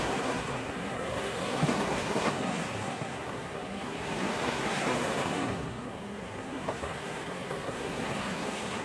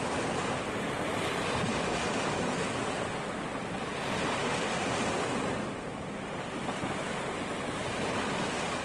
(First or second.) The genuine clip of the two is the second